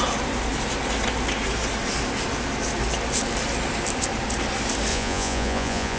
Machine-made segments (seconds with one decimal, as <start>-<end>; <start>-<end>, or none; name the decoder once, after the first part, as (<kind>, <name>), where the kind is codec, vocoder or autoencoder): 4.9-6.0 (vocoder, Vocos)